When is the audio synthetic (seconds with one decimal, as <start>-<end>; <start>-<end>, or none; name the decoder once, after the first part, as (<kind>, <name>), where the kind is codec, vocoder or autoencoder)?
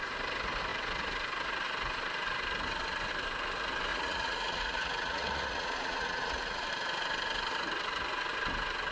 3.9-6.7 (vocoder, Vocos)